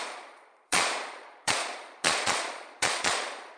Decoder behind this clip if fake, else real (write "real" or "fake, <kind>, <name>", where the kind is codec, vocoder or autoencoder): fake, vocoder, Vocos